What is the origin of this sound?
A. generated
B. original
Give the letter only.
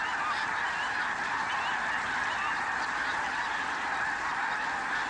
B